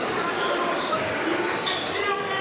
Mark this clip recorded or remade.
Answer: remade